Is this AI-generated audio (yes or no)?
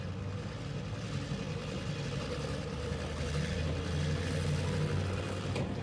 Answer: no